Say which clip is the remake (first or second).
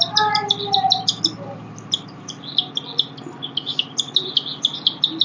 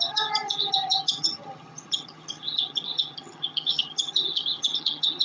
second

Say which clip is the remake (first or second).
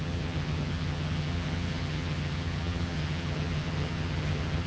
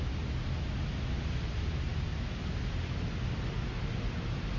first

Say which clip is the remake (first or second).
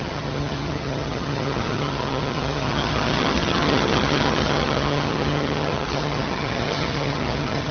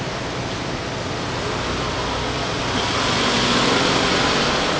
first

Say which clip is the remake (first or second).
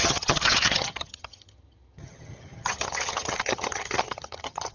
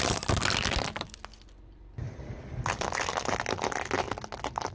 first